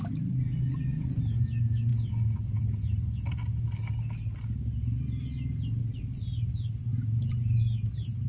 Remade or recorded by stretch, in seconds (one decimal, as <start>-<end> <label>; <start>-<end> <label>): 0.0-8.3 recorded